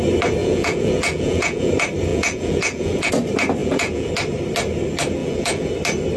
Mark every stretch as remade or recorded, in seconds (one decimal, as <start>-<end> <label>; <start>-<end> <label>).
0.0-0.4 recorded; 0.4-1.7 remade; 1.7-2.1 recorded; 2.1-3.1 remade; 3.1-3.6 recorded; 3.6-4.1 remade; 4.1-5.2 recorded; 5.2-5.7 remade; 5.7-6.2 recorded